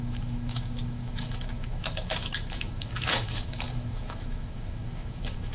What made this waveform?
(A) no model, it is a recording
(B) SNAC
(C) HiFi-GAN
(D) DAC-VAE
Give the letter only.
D